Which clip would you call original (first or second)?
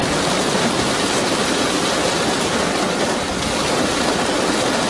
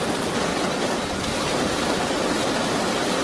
first